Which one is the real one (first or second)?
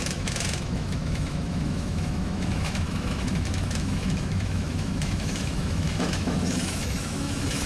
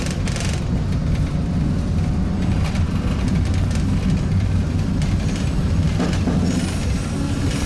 second